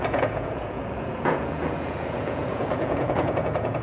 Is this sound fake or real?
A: fake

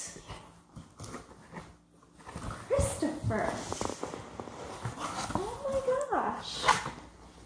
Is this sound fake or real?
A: real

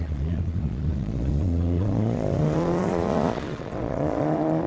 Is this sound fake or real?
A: fake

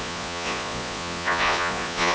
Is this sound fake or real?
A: fake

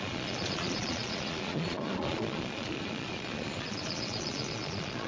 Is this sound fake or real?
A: fake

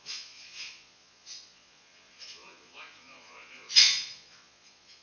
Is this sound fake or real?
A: fake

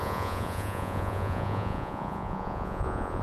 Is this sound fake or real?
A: fake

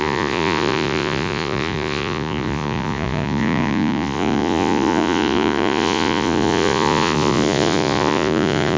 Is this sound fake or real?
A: fake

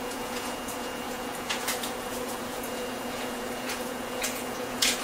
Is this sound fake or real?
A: fake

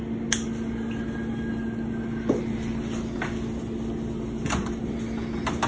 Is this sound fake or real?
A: real